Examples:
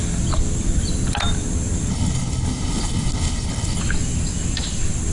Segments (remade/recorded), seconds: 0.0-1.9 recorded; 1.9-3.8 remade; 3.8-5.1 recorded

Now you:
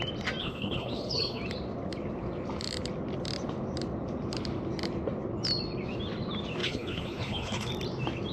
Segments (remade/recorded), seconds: 0.0-0.4 recorded; 0.4-1.4 remade; 1.4-6.6 recorded; 6.6-7.7 remade; 7.7-8.3 recorded

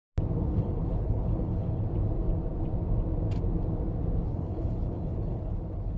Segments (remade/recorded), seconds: 0.0-0.5 recorded; 0.5-1.8 remade; 1.8-4.2 recorded; 4.2-6.0 remade

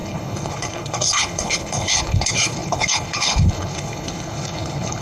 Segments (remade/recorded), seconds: 0.0-5.0 remade

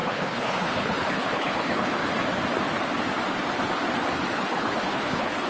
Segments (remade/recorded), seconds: 0.0-2.0 remade; 2.0-4.3 recorded; 4.3-5.5 remade

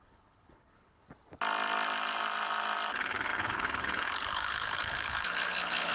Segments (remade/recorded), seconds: 0.0-1.0 remade; 1.0-2.9 recorded; 2.9-5.9 remade

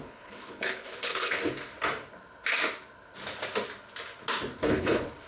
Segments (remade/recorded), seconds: 0.0-1.4 remade; 1.4-4.6 recorded; 4.6-5.3 remade

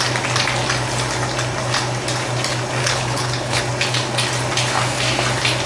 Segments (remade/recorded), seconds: 0.0-2.8 recorded; 2.8-3.6 remade; 3.6-5.7 recorded